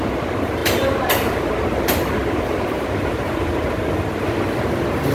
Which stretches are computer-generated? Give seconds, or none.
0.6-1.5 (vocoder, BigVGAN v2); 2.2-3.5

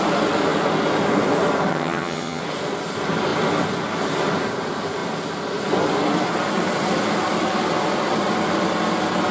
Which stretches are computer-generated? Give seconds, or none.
1.7-2.4 (vocoder, HiFi-GAN)

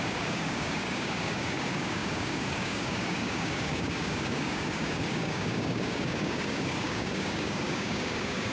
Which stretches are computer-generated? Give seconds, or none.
0.0-8.5 (codec, DAC)

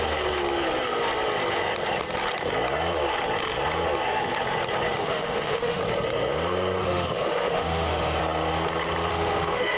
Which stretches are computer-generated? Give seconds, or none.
5.0-5.8 (autoencoder, DAC-VAE); 6.8-8.2; 9.1-9.8

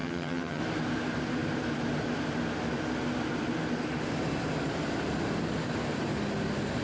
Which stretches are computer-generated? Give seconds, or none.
0.0-0.6 (vocoder, HiFi-GAN)